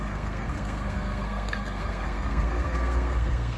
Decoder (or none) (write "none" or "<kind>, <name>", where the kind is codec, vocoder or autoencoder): codec, SNAC